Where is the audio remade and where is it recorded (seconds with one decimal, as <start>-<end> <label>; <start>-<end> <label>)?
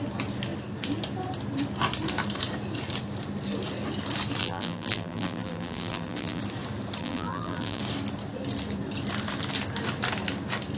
0.0-4.4 recorded; 4.4-6.4 remade; 6.4-7.0 recorded; 7.0-7.8 remade; 7.8-10.8 recorded